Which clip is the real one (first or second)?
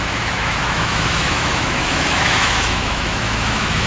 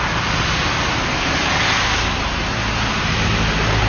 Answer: second